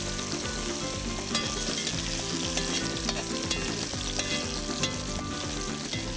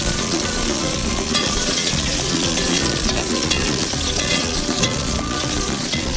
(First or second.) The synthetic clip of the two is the second